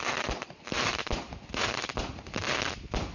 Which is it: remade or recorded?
remade